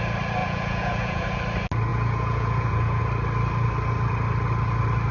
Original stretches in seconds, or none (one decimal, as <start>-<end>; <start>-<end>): 0.0-0.4; 1.4-1.9; 3.0-5.1